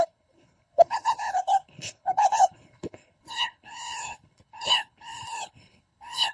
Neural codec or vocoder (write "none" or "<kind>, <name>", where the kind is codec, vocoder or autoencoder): codec, HILCodec